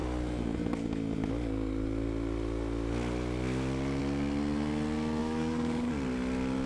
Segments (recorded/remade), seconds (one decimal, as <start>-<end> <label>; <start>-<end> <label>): 0.0-5.2 recorded; 5.2-5.9 remade; 5.9-6.7 recorded